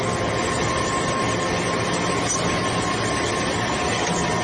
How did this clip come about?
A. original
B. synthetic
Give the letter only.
A